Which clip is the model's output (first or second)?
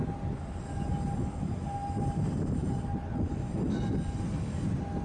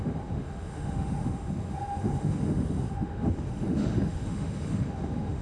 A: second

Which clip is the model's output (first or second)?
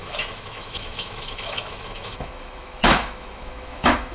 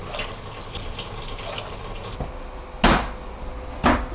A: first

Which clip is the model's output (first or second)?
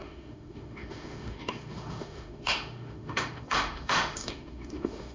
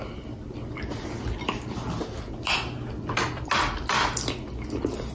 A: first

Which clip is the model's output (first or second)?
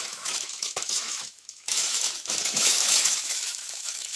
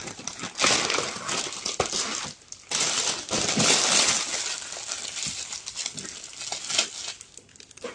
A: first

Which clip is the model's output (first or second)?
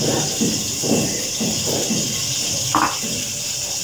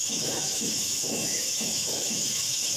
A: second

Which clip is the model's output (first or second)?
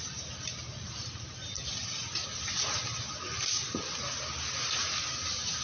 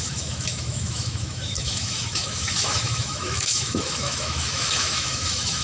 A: second